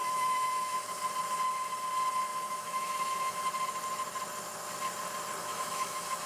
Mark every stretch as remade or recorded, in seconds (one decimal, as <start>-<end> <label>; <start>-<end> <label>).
0.0-0.9 remade; 0.9-2.3 recorded; 2.3-3.4 remade; 3.4-5.4 recorded; 5.4-6.3 remade